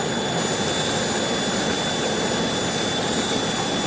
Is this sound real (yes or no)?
yes